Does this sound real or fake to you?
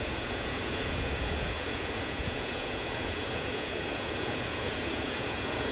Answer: fake